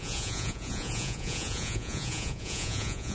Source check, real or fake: fake